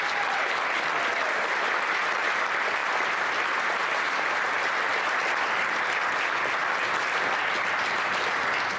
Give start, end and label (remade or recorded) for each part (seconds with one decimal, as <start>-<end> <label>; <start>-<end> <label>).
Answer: 0.0-2.8 recorded; 2.8-6.1 remade; 6.1-6.6 recorded; 6.6-7.4 remade; 7.4-8.8 recorded